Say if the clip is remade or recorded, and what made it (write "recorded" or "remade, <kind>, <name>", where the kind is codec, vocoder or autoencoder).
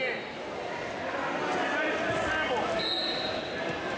recorded